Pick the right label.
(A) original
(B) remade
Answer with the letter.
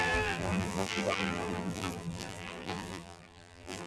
B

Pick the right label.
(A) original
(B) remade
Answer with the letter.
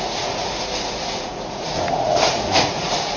B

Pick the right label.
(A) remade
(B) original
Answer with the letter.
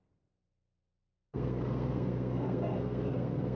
A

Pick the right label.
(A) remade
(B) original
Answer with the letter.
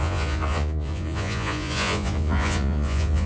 A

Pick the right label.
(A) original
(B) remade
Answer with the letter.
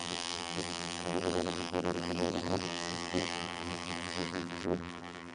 B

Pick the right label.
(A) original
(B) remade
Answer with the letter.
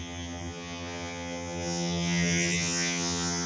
B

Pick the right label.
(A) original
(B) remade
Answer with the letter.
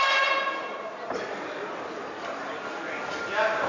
A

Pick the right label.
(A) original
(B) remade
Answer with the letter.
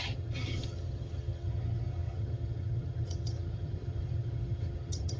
B